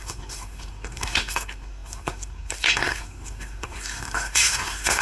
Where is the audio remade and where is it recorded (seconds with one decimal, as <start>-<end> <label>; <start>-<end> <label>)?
0.0-5.0 remade